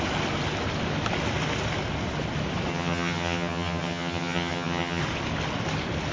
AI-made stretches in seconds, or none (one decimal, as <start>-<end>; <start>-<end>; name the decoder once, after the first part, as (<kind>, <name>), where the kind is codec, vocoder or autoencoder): 2.7-5.0 (vocoder, HiFi-GAN)